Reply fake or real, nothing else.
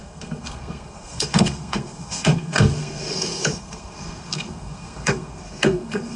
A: fake